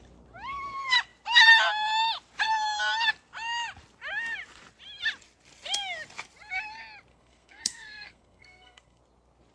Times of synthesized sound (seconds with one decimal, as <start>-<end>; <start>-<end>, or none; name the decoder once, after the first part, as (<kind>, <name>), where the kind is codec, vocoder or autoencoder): 7.1-9.0 (codec, SNAC)

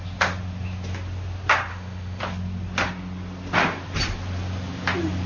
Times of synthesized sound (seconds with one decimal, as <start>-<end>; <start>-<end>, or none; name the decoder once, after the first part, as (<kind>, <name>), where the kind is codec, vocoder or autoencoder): 1.7-2.2 (autoencoder, DAC-VAE)